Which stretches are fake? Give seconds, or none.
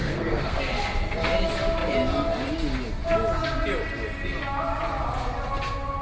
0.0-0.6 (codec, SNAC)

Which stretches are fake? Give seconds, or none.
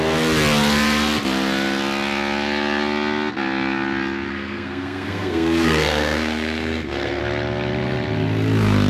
4.3-7.2 (codec, SNAC)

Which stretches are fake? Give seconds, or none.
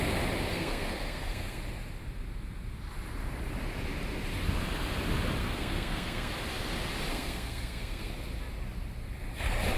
0.5-1.6 (codec, SNAC); 5.4-6.3; 7.1-8.1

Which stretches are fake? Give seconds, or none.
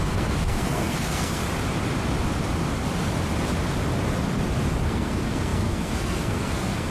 0.0-1.4 (codec, SNAC); 4.8-6.9